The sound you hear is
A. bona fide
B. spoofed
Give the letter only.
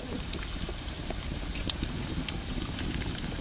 B